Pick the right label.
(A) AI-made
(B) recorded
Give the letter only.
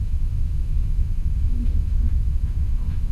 A